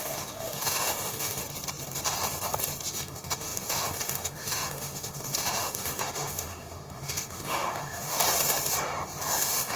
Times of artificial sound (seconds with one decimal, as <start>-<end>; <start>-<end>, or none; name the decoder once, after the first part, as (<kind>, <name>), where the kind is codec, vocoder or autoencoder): 0.0-1.4 (autoencoder, DAC-VAE); 2.9-8.2; 9.3-9.8